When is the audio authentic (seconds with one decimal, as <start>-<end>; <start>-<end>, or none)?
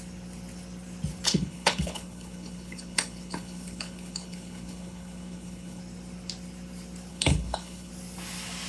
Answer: 0.0-1.3; 5.8-7.1; 7.9-8.7